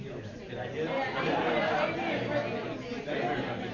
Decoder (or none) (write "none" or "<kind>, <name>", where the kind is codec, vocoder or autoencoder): none